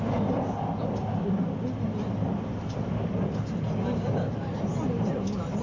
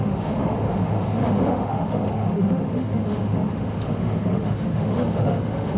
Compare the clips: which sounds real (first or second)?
first